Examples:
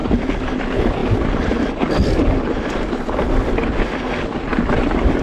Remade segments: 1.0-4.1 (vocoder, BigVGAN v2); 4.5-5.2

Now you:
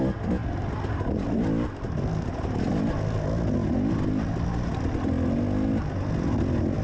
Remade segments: none

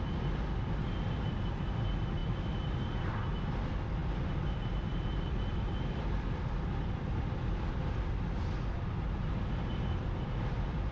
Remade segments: 2.2-3.1 (vocoder, BigVGAN v2); 4.0-8.0

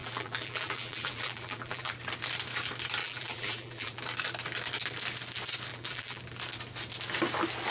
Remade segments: 0.0-1.9 (vocoder, BigVGAN v2); 3.0-4.0; 5.7-6.2

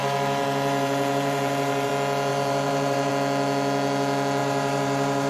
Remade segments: 0.0-1.9 (vocoder, BigVGAN v2); 2.3-3.1; 4.4-5.3

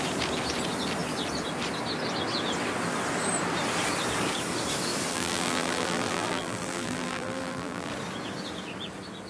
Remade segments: 5.1-7.9 (vocoder, BigVGAN v2)